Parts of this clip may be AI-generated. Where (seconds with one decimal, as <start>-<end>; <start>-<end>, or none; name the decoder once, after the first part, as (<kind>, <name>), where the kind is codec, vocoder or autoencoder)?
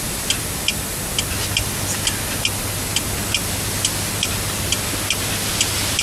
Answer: none